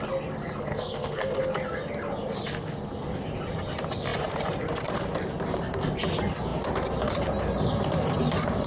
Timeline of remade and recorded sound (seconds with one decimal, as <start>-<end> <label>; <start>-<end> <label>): 0.0-0.7 recorded; 0.7-1.4 remade; 1.4-8.7 recorded